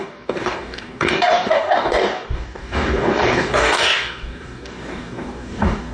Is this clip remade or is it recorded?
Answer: remade